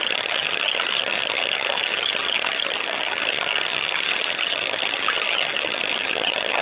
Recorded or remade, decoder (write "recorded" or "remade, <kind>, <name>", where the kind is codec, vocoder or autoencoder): remade, vocoder, HiFi-GAN